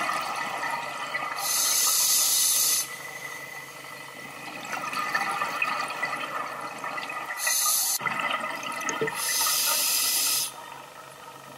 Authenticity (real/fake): real